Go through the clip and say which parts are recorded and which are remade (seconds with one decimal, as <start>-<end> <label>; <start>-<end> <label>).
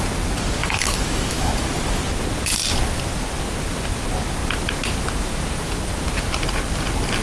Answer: 0.0-0.6 recorded; 0.6-1.5 remade; 1.5-7.2 recorded